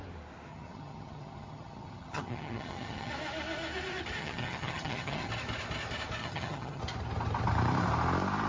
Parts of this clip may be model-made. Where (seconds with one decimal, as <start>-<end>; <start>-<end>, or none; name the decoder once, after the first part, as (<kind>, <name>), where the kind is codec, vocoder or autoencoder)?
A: 0.5-3.1 (vocoder, HiFi-GAN); 4.2-5.3; 6.2-6.8